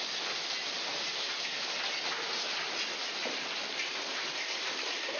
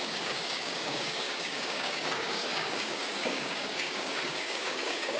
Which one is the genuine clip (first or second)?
first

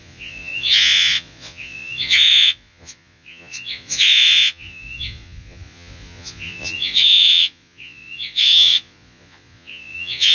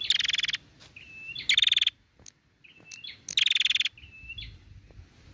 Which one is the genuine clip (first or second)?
second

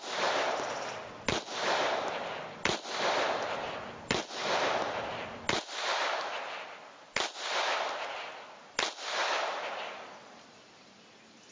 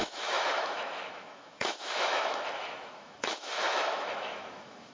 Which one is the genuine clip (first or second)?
first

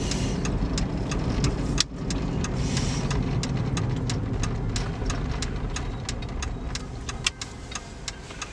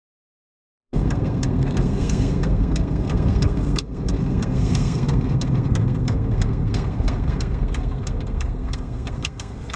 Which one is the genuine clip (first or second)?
first